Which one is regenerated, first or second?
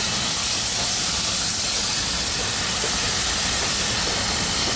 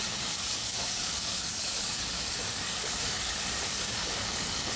second